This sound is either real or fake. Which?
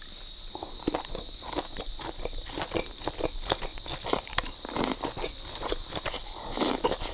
real